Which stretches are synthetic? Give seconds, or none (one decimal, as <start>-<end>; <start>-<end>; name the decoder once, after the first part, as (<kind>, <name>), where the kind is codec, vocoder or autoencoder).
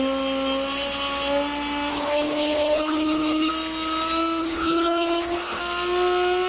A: 1.9-3.5 (codec, HILCodec); 4.4-5.6